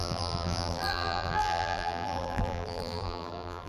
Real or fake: fake